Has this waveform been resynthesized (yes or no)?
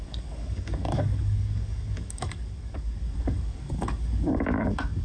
yes